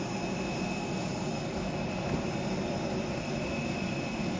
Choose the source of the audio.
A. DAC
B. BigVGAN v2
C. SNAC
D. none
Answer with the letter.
D